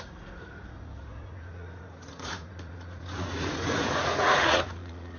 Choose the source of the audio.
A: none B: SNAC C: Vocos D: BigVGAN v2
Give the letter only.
C